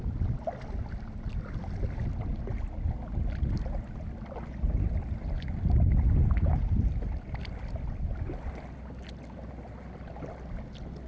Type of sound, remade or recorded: recorded